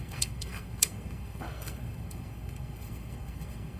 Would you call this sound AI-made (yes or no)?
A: yes